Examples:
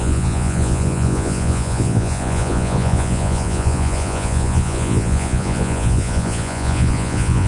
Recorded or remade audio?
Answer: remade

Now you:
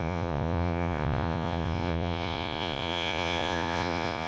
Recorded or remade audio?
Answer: remade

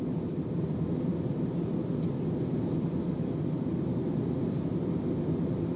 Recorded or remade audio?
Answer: recorded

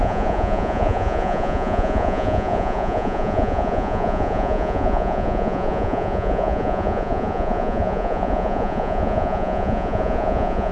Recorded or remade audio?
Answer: remade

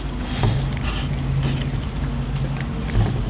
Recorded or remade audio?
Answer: recorded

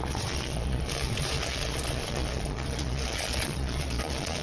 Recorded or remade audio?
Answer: remade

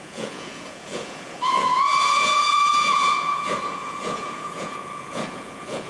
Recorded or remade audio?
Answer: remade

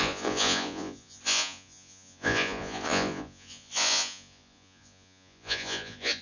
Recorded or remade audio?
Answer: remade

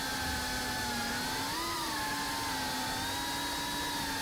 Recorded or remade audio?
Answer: recorded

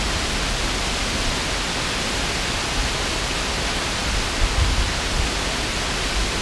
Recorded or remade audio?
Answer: recorded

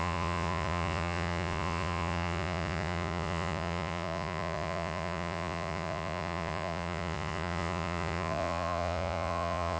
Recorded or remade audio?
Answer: remade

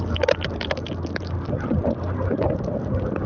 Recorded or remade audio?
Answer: recorded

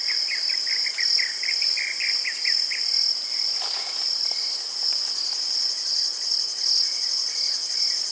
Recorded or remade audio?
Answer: recorded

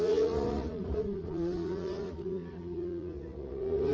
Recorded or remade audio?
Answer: remade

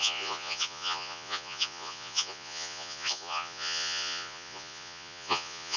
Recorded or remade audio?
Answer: remade